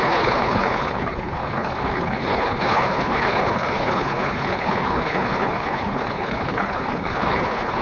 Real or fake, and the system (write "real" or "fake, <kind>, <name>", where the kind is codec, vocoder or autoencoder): fake, codec, HILCodec